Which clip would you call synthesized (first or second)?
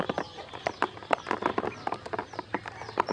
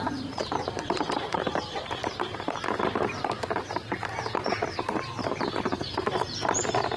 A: second